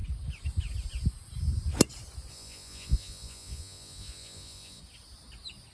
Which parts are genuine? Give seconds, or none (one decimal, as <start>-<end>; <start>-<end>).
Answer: 0.0-2.3; 4.8-5.7